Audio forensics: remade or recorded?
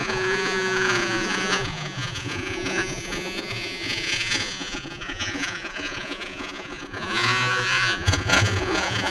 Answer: remade